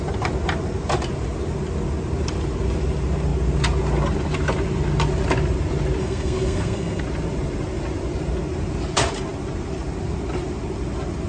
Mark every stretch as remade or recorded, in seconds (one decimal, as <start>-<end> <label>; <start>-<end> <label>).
0.0-6.0 recorded; 6.0-7.0 remade; 7.0-11.3 recorded